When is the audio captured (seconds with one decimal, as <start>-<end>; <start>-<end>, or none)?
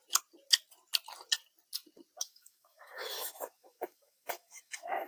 0.0-2.2